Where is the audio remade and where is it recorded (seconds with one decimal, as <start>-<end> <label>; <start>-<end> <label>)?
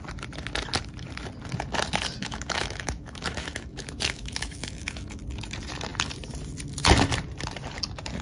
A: 0.0-2.2 recorded; 2.2-5.2 remade; 5.2-8.2 recorded